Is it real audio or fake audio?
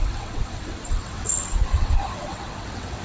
fake